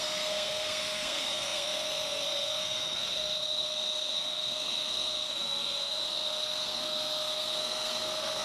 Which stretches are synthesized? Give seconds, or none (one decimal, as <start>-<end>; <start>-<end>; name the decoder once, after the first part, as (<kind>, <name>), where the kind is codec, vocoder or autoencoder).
0.0-8.4 (codec, SNAC)